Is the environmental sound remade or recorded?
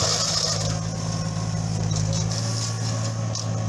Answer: recorded